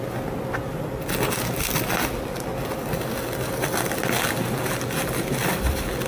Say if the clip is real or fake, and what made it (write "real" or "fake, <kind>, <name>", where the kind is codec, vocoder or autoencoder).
real